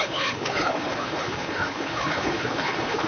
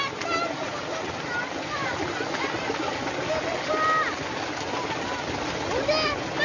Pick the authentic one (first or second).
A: second